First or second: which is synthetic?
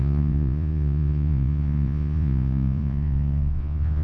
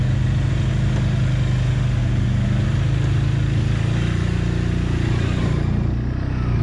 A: first